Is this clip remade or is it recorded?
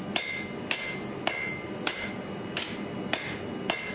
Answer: recorded